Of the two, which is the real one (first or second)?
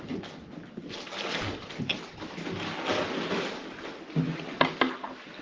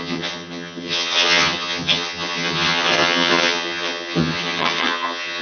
first